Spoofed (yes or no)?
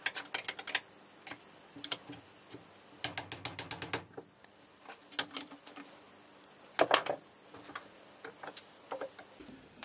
no